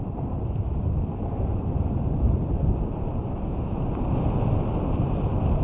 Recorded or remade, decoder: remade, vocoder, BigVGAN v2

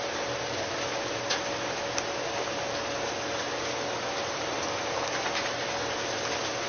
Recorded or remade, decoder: recorded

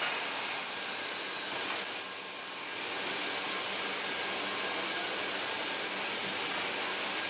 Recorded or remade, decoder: recorded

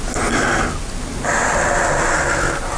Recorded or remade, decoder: recorded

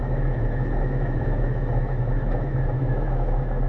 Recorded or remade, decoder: remade, autoencoder, DAC-VAE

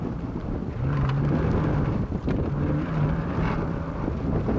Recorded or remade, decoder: recorded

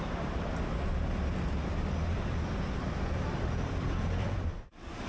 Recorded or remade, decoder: remade, vocoder, BigVGAN v2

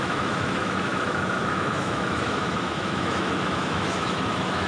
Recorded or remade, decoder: remade, autoencoder, DAC-VAE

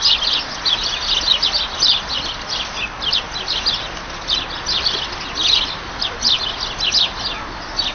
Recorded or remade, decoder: recorded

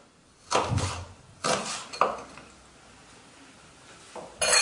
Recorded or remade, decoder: recorded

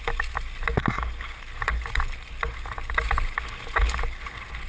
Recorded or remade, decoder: recorded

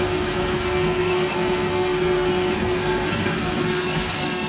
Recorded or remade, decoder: remade, codec, SNAC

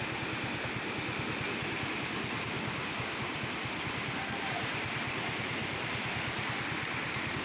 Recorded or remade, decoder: recorded